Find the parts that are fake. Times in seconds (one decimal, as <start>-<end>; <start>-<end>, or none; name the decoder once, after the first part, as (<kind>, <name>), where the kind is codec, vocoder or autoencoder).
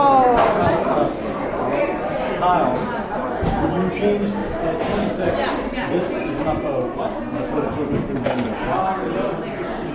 0.4-1.4 (vocoder, BigVGAN v2); 2.7-3.4; 4.4-7.2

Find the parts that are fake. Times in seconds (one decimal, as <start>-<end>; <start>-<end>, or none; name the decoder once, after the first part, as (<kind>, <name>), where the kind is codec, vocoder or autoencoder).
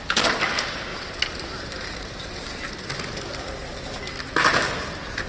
0.9-3.0 (vocoder, BigVGAN v2)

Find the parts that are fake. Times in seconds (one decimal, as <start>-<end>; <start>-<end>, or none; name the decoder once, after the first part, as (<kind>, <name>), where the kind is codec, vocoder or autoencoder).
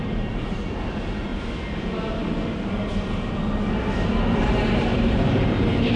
0.0-1.3 (vocoder, BigVGAN v2); 4.4-6.0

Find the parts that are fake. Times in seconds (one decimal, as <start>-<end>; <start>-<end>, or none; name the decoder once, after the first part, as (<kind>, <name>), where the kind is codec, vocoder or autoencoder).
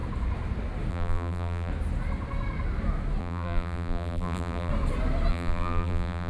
0.9-1.7 (vocoder, BigVGAN v2); 3.2-4.7; 5.3-6.3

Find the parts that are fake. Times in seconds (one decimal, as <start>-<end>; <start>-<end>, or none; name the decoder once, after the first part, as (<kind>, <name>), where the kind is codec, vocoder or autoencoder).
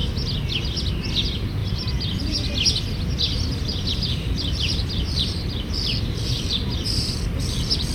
1.6-2.5 (vocoder, BigVGAN v2); 3.7-7.9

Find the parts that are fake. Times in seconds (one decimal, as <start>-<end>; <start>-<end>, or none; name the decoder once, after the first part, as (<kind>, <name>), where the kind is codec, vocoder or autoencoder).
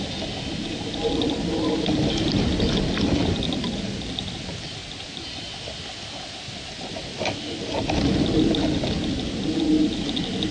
4.8-5.5 (vocoder, BigVGAN v2)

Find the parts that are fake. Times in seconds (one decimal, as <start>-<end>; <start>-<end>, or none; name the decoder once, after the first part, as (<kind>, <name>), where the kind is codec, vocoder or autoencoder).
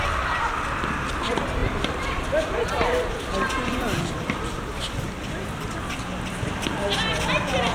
1.6-5.7 (vocoder, BigVGAN v2)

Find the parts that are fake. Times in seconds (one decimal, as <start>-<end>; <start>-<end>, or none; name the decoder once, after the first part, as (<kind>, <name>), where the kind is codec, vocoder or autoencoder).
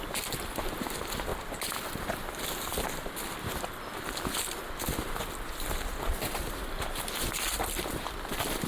1.3-3.0 (vocoder, BigVGAN v2)